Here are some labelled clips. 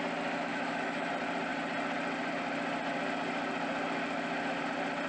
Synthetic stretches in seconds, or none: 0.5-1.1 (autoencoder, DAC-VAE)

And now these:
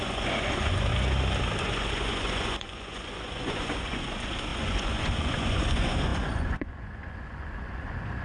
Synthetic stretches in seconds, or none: 0.0-0.9 (vocoder, Vocos); 1.6-8.2